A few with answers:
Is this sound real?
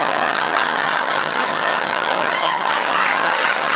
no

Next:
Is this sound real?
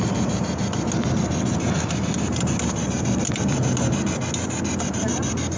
yes